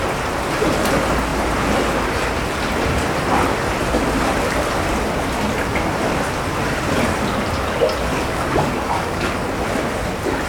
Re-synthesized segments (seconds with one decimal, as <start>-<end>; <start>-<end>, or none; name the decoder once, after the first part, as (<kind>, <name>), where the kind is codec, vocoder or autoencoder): 8.1-9.3 (codec, DAC)